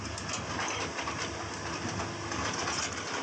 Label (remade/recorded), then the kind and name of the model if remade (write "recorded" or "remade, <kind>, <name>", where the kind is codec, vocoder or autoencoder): recorded